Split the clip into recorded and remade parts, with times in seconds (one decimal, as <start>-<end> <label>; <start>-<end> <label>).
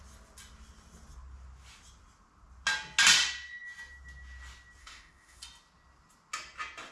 0.0-4.8 recorded; 4.8-5.4 remade; 5.4-6.9 recorded